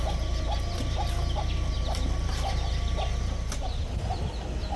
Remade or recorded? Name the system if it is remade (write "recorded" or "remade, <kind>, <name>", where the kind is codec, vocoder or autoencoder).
recorded